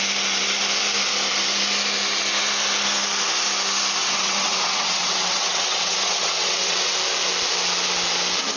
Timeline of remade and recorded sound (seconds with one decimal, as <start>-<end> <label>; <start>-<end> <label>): 0.0-4.0 recorded; 4.0-6.9 remade; 6.9-8.6 recorded